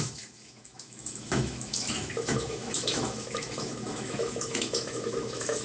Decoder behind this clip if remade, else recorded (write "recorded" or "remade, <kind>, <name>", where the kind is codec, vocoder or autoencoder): remade, autoencoder, DAC-VAE